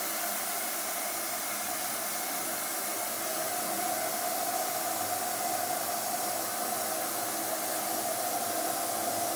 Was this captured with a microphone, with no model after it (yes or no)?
yes